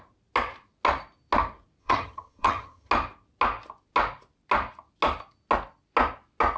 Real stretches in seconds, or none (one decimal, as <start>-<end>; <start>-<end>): 0.0-1.8; 2.9-6.6